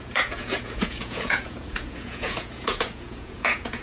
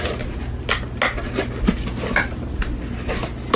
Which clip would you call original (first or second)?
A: second